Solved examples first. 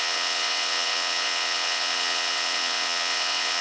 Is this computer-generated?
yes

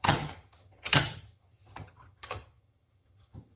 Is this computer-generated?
yes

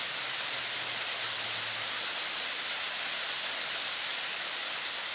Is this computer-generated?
no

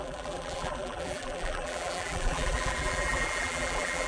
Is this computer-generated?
yes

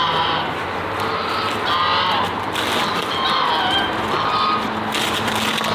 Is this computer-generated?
no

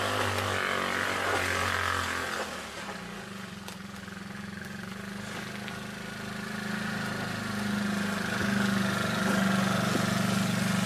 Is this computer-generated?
no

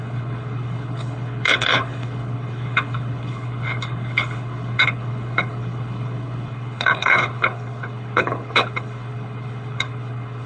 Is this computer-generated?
yes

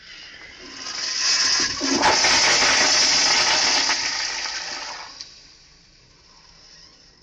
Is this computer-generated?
no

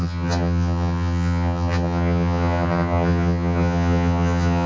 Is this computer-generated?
yes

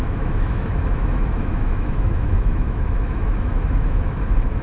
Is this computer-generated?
yes